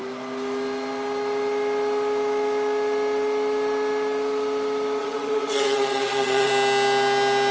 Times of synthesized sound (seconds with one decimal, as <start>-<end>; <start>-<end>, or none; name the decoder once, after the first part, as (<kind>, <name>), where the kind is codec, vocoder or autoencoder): 5.0-6.5 (vocoder, WaveNeXt)